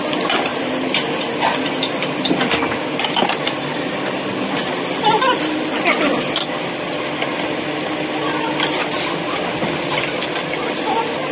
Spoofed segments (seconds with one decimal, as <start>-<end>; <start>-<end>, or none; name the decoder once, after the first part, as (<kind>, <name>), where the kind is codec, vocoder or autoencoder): 0.5-2.0 (vocoder, BigVGAN v2); 4.6-6.3